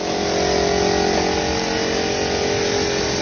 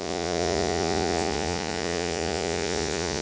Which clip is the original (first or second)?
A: first